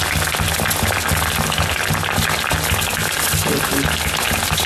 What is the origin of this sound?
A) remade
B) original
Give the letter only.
B